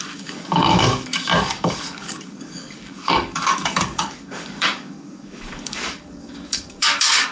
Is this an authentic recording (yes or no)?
no